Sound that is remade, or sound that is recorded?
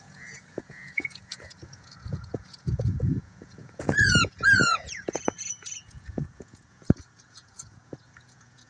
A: remade